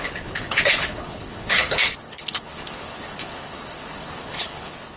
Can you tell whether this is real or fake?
fake